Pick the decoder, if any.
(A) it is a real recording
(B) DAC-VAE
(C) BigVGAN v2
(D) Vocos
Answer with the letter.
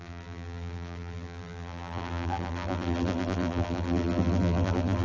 C